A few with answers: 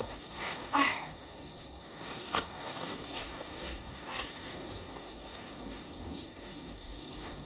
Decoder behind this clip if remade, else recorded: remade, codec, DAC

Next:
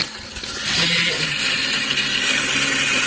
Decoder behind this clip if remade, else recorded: recorded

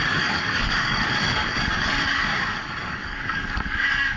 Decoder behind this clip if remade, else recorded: remade, codec, DAC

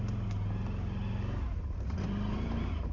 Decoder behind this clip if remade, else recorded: recorded